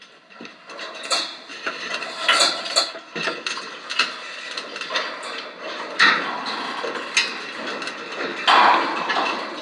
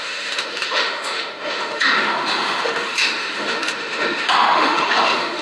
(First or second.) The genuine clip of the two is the first